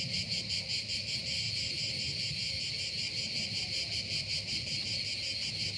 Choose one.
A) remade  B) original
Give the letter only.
B